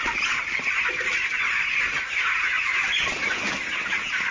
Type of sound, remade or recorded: recorded